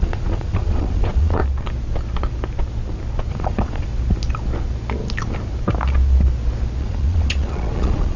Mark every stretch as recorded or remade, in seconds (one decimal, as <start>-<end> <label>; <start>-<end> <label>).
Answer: 0.0-1.4 remade; 1.4-3.3 recorded; 3.3-3.9 remade; 3.9-6.8 recorded; 6.8-8.2 remade